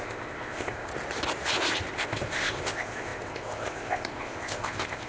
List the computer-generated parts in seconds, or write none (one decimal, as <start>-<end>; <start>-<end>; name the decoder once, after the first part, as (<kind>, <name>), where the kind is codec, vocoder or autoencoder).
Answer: 0.0-0.9 (codec, ZipCodec); 1.9-5.1